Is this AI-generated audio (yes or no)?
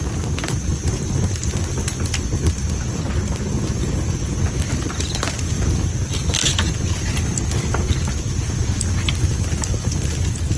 no